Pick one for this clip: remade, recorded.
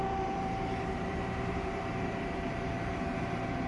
remade